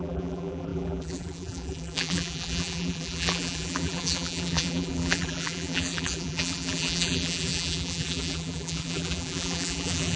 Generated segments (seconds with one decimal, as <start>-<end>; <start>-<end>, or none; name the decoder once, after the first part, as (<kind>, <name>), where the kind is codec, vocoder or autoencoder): 0.0-10.2 (vocoder, BigVGAN v2)